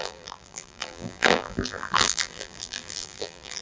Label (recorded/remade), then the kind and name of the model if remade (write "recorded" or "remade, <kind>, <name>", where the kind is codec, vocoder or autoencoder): remade, vocoder, BigVGAN v2